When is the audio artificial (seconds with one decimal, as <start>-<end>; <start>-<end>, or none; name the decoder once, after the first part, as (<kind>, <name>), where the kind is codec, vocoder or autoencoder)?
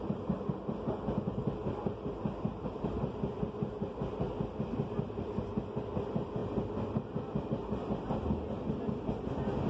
none